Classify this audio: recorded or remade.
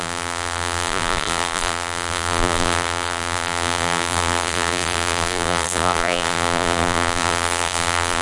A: remade